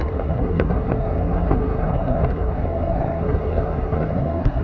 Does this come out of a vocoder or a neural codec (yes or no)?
yes